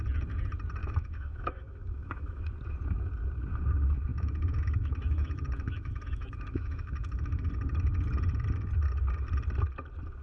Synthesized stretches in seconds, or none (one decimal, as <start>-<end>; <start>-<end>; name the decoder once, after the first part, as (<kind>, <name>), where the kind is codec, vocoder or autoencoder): 0.8-2.5 (autoencoder, DAC-VAE); 4.1-7.5